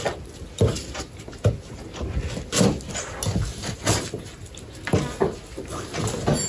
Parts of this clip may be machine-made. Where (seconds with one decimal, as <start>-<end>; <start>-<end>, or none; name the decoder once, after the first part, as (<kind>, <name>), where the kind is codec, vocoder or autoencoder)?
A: none